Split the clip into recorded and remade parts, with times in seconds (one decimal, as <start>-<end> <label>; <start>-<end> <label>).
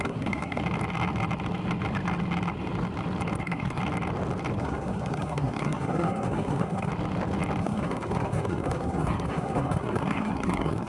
0.0-0.6 remade; 0.6-3.4 recorded; 3.4-3.8 remade; 3.8-4.6 recorded; 4.6-6.9 remade; 6.9-7.6 recorded; 7.6-10.9 remade